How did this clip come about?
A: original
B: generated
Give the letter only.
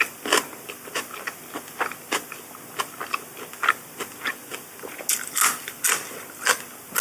A